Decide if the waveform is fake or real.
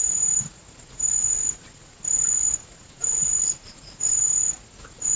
fake